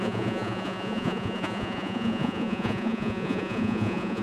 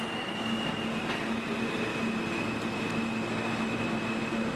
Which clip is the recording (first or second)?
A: second